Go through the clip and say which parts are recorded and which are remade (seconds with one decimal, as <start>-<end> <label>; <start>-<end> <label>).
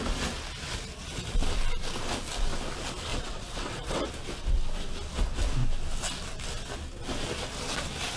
0.0-3.1 recorded; 3.1-4.1 remade; 4.1-8.2 recorded